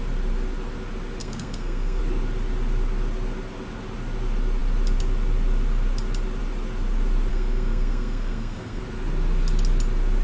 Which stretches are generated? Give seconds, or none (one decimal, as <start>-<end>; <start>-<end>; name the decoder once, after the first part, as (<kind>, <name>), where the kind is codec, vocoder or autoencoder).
1.2-2.0 (codec, SNAC); 7.3-8.8